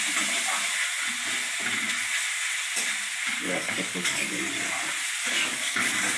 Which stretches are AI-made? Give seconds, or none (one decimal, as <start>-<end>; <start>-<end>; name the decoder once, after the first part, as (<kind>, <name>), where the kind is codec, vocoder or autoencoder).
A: 3.4-4.5 (codec, DAC); 5.2-6.2